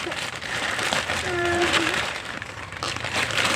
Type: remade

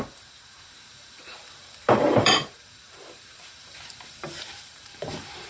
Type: remade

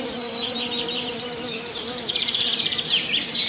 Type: remade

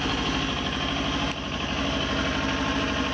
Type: recorded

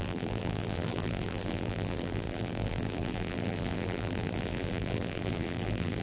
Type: remade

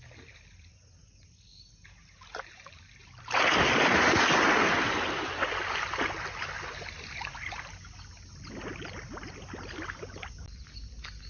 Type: recorded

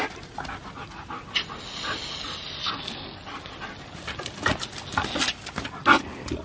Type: recorded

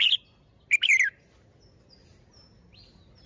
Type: recorded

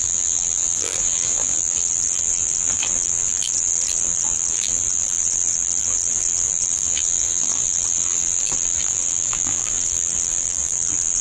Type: remade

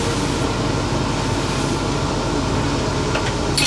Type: recorded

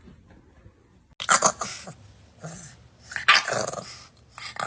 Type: recorded